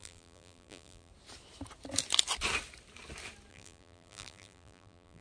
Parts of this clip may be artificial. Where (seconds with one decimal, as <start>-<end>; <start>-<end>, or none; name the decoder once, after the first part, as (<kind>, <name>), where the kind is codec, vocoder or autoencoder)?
0.0-1.1 (vocoder, BigVGAN v2); 3.5-5.2